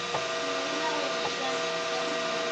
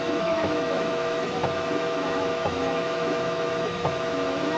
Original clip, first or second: first